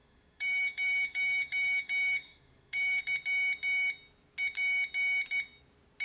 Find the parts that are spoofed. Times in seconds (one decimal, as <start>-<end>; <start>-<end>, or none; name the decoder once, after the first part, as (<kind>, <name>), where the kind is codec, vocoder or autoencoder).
0.0-3.0 (autoencoder, DAC-VAE)